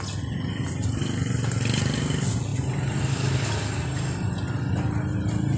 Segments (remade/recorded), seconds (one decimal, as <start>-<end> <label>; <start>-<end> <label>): 0.0-5.6 recorded